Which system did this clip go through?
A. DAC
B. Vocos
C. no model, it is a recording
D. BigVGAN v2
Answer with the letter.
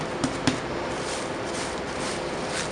C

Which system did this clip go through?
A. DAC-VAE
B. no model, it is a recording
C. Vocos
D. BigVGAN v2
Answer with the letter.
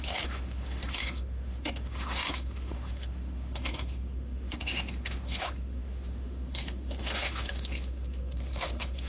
A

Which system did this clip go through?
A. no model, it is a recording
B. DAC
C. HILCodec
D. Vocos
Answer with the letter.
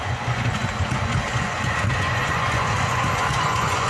D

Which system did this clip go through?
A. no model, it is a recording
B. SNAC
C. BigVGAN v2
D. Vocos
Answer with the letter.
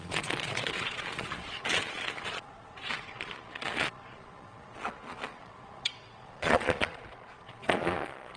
D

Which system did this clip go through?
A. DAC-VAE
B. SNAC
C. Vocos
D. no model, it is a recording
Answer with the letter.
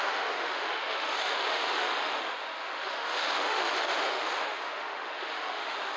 A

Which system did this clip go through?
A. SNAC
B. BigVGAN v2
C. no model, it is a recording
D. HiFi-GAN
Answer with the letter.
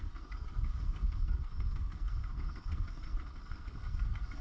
A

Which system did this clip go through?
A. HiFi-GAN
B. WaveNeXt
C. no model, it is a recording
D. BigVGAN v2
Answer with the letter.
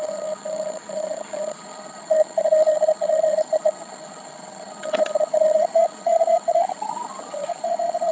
A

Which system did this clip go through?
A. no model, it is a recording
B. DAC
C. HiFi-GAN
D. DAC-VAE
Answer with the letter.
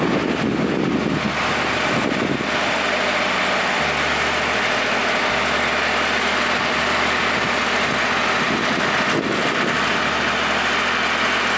A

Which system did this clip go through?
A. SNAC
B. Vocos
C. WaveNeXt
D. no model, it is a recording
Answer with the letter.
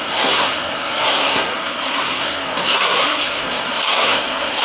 A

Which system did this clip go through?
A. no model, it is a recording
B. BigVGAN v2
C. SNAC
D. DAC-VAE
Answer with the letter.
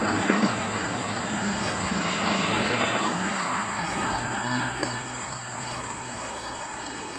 C